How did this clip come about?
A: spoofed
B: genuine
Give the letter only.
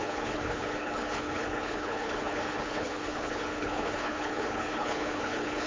A